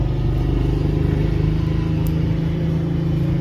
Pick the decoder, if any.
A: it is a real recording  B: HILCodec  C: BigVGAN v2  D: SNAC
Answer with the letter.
A